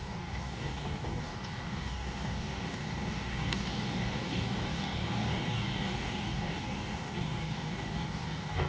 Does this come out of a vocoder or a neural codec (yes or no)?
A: yes